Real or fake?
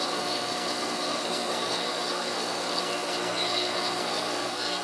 fake